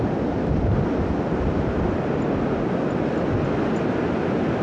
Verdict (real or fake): real